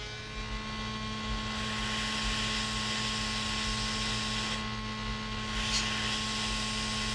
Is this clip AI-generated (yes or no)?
no